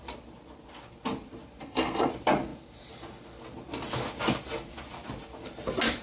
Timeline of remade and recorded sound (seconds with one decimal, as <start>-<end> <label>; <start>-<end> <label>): 0.0-1.6 recorded; 1.6-2.1 remade; 2.1-6.0 recorded